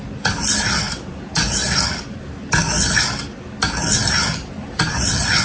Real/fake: real